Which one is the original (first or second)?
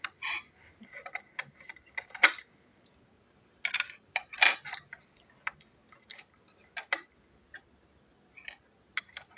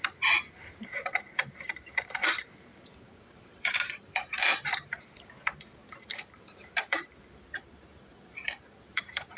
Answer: first